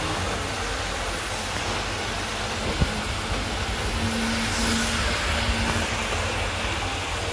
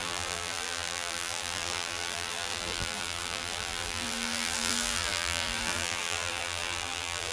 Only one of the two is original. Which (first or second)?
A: first